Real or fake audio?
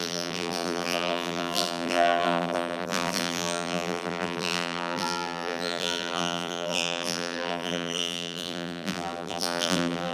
fake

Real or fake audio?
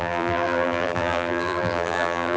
fake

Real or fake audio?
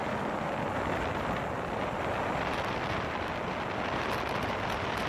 fake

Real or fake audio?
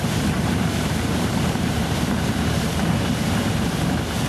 fake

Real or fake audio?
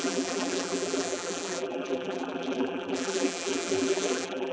fake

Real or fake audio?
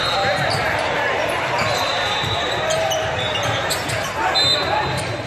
fake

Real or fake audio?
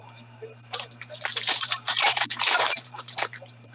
fake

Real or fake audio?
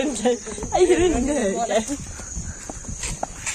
fake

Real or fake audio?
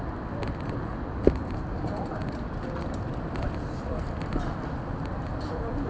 fake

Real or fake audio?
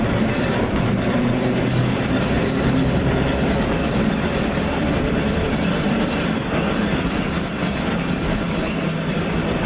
fake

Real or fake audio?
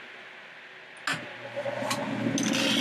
real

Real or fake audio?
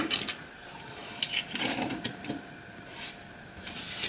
fake